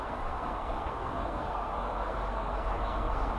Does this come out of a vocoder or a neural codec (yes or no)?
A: yes